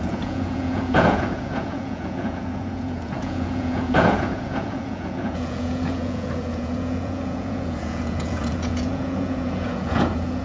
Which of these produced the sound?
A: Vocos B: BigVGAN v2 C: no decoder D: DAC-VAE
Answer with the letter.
A